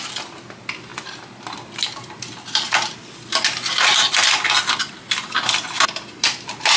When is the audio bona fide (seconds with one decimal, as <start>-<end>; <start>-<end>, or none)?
0.0-6.8